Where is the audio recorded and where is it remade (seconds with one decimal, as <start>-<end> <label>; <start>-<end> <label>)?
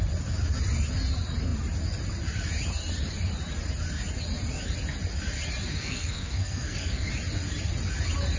0.0-5.7 recorded; 5.7-7.1 remade; 7.1-8.4 recorded